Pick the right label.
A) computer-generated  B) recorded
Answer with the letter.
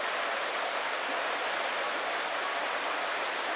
B